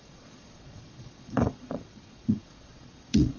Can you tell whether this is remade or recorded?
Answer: remade